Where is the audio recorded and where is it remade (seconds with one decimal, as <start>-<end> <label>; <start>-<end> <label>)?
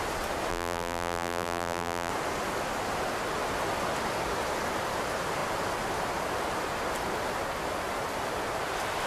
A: 0.0-0.5 recorded; 0.5-2.1 remade; 2.1-9.1 recorded